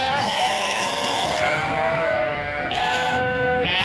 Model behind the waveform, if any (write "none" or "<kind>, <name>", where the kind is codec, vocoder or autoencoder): codec, SNAC